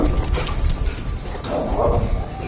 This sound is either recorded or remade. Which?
recorded